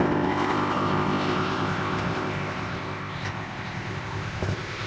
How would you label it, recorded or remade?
remade